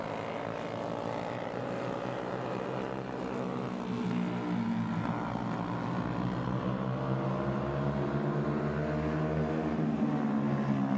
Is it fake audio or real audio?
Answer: real